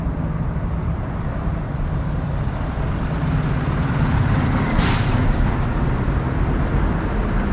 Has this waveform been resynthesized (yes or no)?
yes